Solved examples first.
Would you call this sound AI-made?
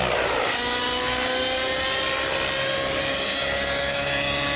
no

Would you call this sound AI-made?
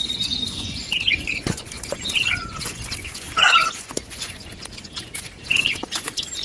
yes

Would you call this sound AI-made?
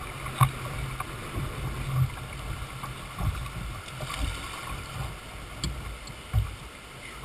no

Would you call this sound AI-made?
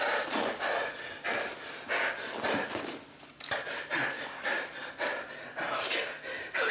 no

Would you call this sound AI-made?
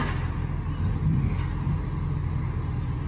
no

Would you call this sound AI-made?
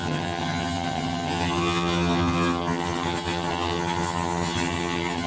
yes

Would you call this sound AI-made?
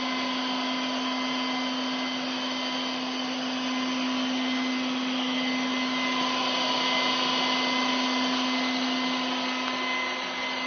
no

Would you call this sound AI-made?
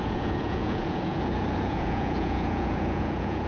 yes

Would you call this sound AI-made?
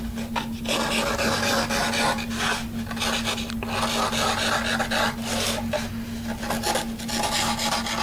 no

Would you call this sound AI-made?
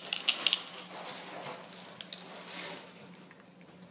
no